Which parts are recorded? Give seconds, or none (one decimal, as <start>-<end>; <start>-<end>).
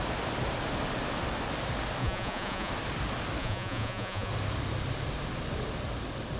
0.0-2.0; 2.7-3.4; 4.3-6.4